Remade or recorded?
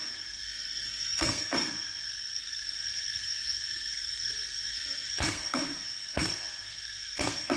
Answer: remade